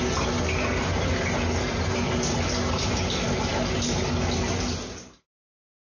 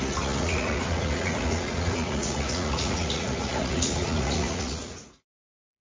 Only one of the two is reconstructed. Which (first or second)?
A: second